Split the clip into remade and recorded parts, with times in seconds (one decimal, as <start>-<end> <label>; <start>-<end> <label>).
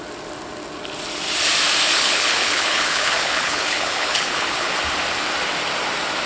0.0-1.9 recorded; 1.9-4.7 remade; 4.7-6.3 recorded